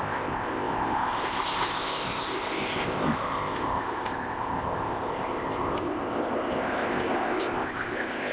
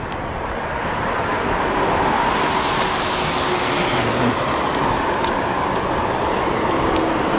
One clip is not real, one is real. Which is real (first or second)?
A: second